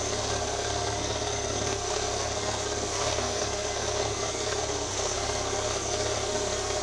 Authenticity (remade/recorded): remade